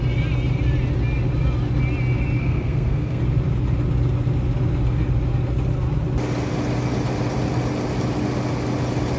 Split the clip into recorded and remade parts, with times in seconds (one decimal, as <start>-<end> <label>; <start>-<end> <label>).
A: 0.0-2.4 recorded; 2.4-3.2 remade; 3.2-9.2 recorded